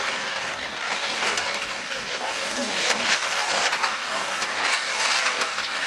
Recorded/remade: remade